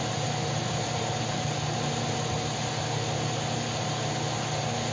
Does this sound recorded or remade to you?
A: recorded